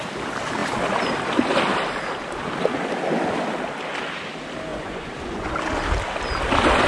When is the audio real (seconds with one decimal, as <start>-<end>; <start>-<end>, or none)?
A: 0.0-4.7; 5.5-6.9